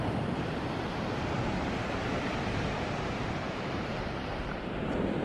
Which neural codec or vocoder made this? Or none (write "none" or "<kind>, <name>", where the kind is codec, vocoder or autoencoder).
vocoder, BigVGAN v2